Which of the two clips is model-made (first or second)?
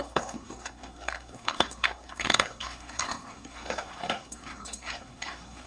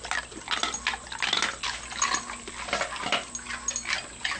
first